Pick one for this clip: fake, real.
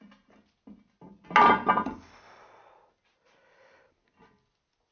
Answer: real